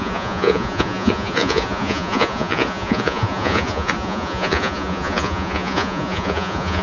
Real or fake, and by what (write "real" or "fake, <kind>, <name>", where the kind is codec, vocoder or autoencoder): fake, vocoder, Vocos